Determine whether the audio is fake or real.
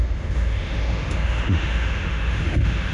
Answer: fake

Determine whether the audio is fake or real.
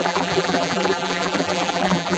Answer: fake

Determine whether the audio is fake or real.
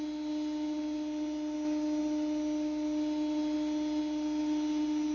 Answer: real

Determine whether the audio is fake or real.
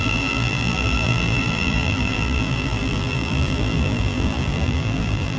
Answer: fake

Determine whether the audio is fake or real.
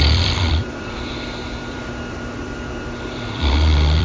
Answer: fake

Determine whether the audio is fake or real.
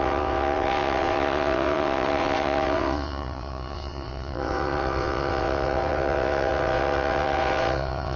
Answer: fake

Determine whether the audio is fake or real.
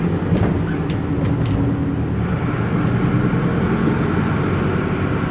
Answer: real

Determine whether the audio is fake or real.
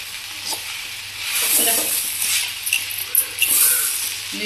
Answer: real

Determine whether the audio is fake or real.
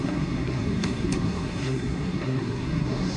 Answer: fake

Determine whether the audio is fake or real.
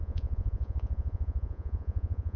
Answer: fake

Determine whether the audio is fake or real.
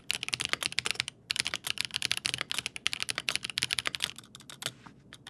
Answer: real